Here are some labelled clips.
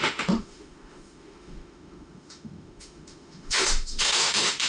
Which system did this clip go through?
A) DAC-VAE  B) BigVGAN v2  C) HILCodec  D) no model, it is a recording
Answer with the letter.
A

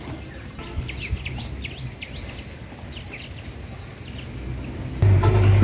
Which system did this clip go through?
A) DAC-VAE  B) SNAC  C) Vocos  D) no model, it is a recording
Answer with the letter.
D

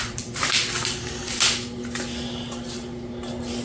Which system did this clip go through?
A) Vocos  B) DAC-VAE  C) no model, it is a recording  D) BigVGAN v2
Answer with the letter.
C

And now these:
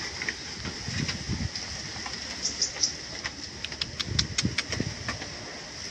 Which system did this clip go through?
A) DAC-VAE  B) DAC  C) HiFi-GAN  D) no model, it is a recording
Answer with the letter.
D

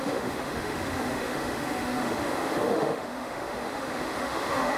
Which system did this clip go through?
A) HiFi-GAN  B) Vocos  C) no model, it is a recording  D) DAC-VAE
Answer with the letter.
D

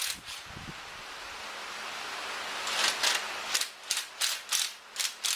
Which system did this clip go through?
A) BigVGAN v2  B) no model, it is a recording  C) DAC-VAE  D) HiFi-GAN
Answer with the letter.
B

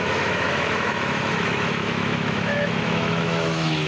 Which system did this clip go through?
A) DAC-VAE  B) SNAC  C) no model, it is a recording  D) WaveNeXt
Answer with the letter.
A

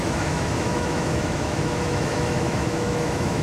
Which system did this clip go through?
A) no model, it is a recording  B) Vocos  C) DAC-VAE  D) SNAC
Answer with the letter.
C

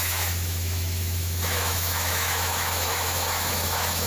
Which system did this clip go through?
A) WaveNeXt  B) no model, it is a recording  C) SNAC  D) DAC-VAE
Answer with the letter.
D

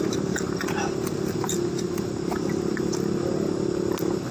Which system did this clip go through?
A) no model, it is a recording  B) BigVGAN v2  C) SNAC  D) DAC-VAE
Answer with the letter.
A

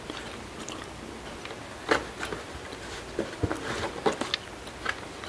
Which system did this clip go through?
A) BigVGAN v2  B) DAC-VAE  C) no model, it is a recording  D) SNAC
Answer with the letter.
C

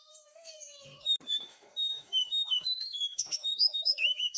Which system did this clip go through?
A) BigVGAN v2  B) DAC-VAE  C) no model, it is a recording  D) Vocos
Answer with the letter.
B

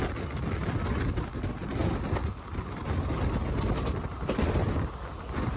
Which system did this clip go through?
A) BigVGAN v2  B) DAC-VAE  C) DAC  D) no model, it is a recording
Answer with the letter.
D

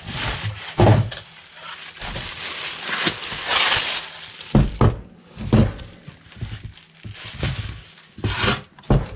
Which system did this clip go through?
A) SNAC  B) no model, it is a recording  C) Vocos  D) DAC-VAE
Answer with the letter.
B